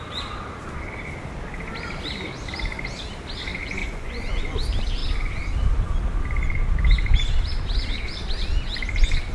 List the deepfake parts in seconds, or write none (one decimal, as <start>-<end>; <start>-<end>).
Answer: 3.8-4.4